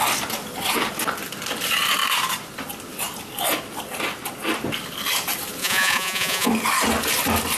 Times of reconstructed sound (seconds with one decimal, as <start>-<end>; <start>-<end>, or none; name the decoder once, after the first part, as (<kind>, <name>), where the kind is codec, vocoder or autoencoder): 5.6-6.5 (vocoder, Vocos)